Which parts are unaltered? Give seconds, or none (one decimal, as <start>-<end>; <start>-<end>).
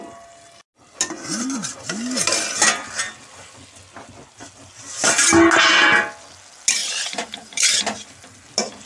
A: 0.0-6.8; 7.8-8.9